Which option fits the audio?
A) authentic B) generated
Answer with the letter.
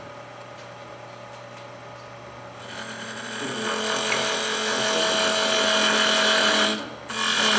A